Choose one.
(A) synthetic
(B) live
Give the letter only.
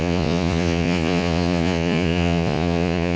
A